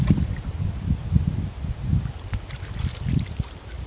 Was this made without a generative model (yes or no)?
yes